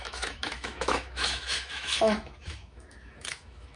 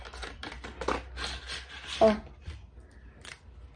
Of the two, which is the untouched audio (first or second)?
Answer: second